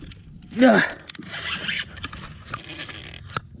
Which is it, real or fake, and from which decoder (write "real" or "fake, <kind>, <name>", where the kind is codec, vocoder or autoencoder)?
real